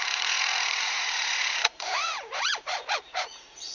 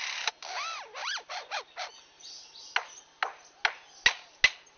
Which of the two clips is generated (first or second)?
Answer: first